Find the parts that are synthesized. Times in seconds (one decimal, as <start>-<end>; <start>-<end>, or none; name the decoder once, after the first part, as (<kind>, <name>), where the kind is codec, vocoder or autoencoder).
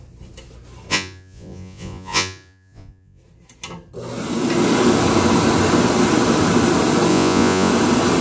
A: 0.9-3.2 (vocoder, Vocos); 7.1-7.7